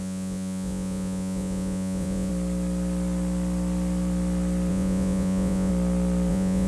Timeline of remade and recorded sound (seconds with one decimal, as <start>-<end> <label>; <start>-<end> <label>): 0.0-2.3 remade; 2.3-4.7 recorded; 4.7-5.7 remade; 5.7-6.3 recorded; 6.3-6.7 remade